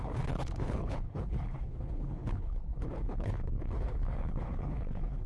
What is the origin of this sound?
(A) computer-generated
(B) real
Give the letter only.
A